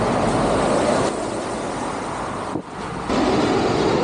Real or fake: real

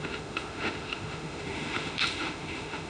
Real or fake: fake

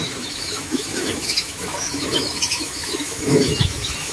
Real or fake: fake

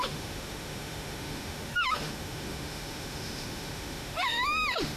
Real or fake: fake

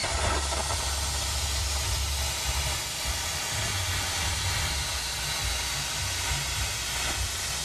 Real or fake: real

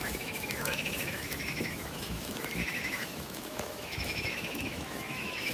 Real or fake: fake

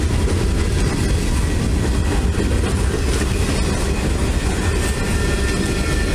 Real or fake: real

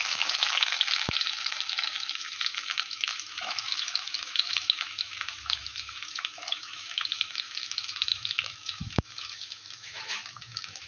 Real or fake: fake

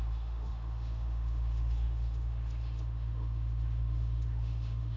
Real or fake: fake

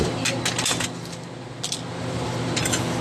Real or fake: real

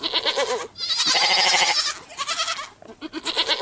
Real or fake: real